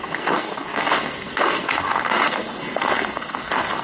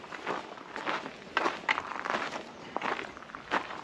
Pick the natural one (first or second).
second